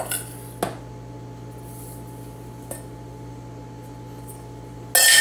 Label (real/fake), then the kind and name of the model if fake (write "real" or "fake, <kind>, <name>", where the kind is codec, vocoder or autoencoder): real